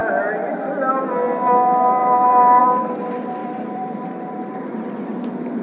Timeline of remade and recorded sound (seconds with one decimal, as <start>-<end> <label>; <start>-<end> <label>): 0.0-2.0 recorded; 2.0-2.6 remade; 2.6-3.4 recorded; 3.4-4.9 remade; 4.9-5.6 recorded